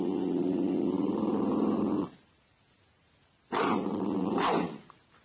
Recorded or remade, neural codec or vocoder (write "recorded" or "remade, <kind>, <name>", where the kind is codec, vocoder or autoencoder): remade, vocoder, BigVGAN v2